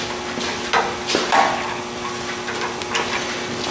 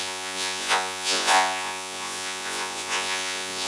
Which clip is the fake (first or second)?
second